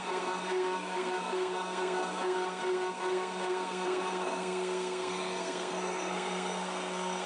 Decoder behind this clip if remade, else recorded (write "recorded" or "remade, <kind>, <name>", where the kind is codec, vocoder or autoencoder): remade, codec, SNAC